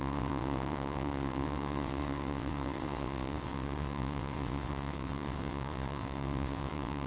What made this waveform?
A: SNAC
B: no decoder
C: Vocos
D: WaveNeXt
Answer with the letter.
D